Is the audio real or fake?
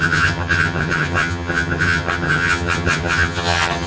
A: fake